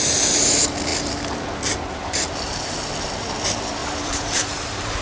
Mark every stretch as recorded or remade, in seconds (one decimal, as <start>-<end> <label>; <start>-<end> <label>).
0.0-3.8 recorded; 3.8-5.0 remade